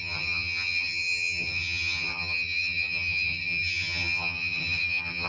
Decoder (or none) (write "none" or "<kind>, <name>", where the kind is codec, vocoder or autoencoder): vocoder, HiFi-GAN